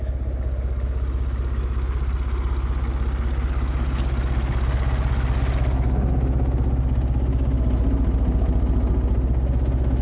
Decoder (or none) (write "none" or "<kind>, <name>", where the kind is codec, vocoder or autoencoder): none